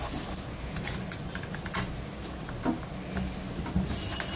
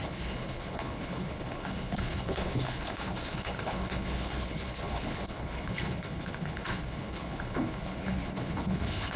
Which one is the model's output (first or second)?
second